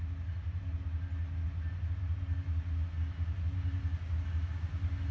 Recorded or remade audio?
recorded